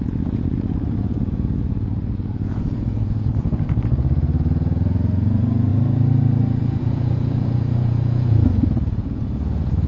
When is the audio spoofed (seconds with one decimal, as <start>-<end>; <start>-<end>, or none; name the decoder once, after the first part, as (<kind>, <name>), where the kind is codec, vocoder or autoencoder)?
0.0-5.7 (vocoder, Vocos); 6.6-9.9